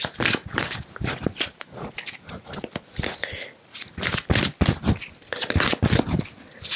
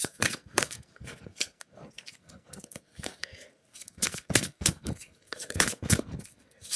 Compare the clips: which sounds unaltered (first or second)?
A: first